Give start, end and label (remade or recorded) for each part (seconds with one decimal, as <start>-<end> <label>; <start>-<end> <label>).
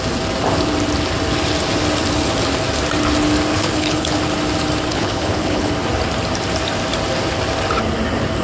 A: 0.0-3.5 recorded; 3.5-4.2 remade; 4.2-4.9 recorded; 4.9-5.7 remade; 5.7-8.4 recorded